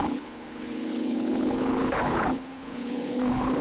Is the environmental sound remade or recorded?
remade